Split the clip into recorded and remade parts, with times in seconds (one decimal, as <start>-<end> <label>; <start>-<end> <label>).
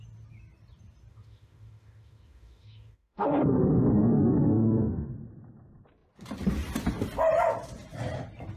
0.0-1.1 recorded; 1.1-5.1 remade; 5.1-8.6 recorded